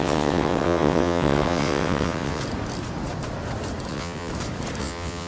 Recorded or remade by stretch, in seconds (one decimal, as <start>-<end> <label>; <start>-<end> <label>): 0.0-2.4 remade; 2.4-3.9 recorded; 3.9-4.3 remade; 4.3-4.8 recorded; 4.8-5.3 remade